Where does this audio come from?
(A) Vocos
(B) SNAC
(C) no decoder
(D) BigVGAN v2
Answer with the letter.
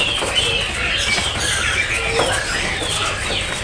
C